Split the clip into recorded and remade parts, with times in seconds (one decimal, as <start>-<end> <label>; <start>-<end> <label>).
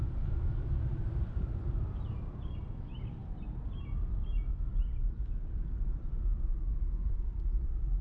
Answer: 0.0-8.0 recorded